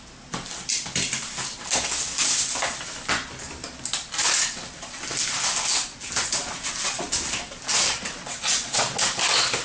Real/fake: real